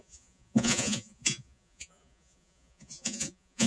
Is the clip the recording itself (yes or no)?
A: no